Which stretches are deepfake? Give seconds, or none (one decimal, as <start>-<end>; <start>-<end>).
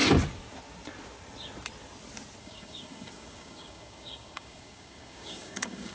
2.4-5.9